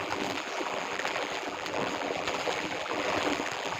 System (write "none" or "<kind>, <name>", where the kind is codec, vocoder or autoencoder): vocoder, BigVGAN v2